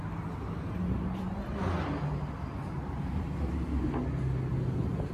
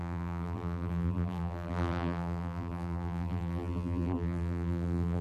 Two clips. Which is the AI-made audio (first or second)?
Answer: second